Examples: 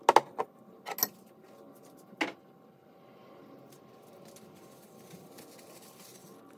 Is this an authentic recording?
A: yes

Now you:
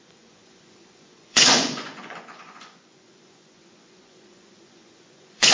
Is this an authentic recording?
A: no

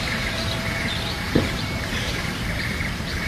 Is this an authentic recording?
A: no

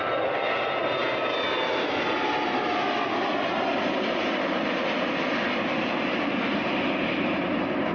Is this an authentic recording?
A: yes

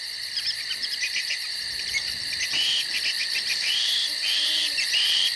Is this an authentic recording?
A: no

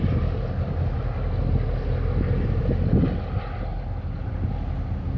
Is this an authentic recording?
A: yes